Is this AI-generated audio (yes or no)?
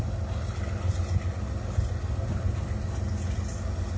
no